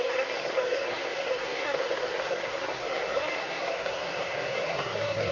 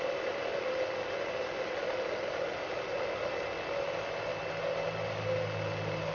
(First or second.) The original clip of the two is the second